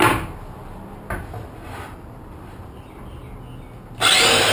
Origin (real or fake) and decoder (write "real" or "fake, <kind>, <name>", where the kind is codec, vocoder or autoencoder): real